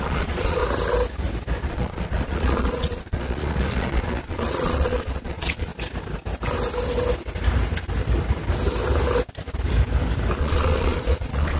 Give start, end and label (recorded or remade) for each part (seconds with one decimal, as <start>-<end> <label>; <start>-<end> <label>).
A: 0.0-0.6 remade; 0.6-1.7 recorded; 1.7-5.7 remade; 5.7-10.4 recorded; 10.4-11.6 remade